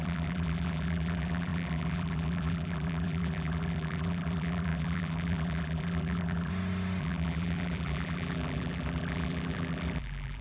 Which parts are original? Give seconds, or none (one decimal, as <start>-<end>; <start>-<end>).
6.5-7.0